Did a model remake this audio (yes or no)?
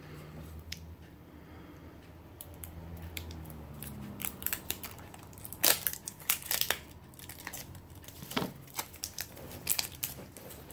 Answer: yes